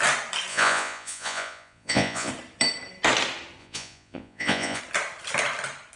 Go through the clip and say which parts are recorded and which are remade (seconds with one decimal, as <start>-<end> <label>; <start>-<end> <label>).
0.0-0.5 recorded; 0.5-2.3 remade; 2.3-3.6 recorded; 3.6-4.8 remade; 4.8-6.0 recorded